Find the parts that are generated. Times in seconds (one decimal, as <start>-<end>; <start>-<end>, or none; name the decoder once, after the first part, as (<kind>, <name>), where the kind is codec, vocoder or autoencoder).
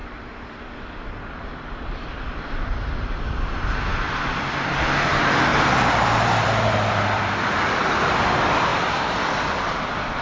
0.0-3.2 (vocoder, BigVGAN v2); 5.5-7.5; 8.7-9.3